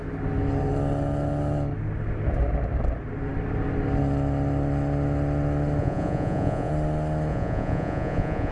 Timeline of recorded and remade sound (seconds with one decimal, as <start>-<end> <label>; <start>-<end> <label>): 0.0-5.8 recorded; 5.8-6.7 remade; 6.7-7.3 recorded; 7.3-8.5 remade